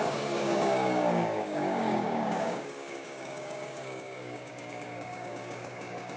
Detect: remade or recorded remade